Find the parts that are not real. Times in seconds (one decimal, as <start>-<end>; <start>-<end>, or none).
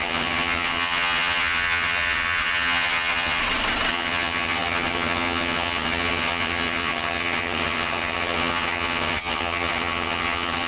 0.0-3.4; 3.9-10.7